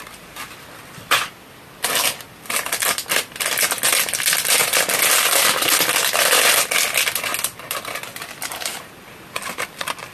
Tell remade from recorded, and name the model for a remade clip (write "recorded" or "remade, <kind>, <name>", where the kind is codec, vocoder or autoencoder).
recorded